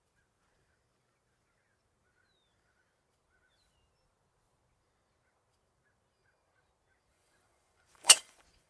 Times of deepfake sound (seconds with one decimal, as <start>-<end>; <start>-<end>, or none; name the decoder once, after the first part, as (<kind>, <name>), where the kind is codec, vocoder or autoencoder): 7.1-8.7 (vocoder, Vocos)